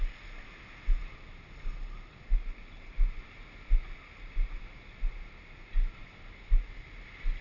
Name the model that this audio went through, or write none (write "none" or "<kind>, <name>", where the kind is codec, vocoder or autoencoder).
none